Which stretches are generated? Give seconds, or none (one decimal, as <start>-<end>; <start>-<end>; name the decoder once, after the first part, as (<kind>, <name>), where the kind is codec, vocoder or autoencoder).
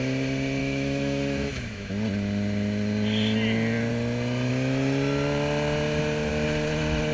0.6-1.9 (autoencoder, DAC-VAE)